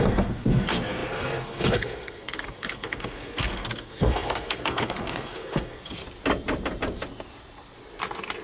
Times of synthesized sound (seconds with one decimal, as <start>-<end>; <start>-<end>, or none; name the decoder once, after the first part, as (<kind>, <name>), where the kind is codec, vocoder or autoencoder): 0.0-6.0 (codec, SNAC)